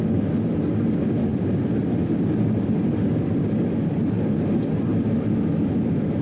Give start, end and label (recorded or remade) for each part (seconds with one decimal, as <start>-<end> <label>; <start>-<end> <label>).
0.0-6.2 recorded